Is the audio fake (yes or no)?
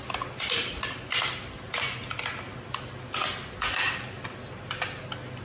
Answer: no